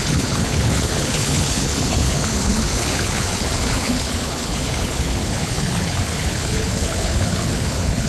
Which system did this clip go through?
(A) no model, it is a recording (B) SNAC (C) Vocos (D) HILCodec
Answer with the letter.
D